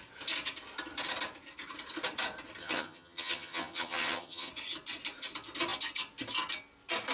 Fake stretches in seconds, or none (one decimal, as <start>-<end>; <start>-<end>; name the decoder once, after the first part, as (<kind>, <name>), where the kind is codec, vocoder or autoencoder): 2.6-4.5 (vocoder, HiFi-GAN)

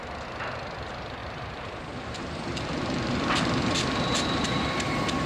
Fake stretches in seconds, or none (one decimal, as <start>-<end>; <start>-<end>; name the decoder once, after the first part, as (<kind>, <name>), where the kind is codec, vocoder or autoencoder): 1.2-4.4 (vocoder, BigVGAN v2)

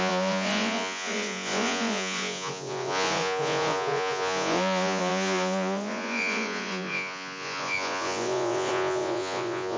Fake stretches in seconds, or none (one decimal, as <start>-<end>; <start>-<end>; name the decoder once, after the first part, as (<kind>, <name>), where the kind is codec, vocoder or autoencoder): 0.0-9.8 (vocoder, Vocos)

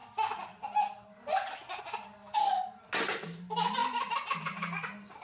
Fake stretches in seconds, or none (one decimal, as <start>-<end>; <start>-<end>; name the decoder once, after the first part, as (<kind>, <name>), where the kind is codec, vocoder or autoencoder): none